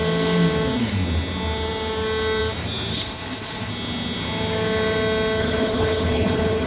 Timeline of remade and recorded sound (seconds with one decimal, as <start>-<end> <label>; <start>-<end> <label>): 0.0-2.9 recorded; 2.9-3.7 remade; 3.7-5.4 recorded; 5.4-6.7 remade

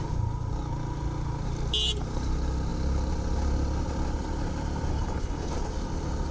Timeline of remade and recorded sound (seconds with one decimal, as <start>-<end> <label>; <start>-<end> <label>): 0.0-4.9 recorded; 4.9-5.5 remade; 5.5-6.3 recorded